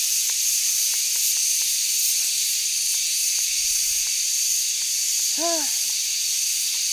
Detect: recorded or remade recorded